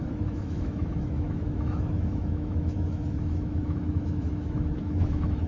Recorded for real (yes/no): no